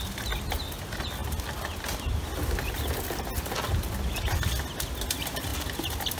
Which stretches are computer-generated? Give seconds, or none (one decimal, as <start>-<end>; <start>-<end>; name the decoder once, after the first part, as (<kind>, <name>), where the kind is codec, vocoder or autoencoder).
none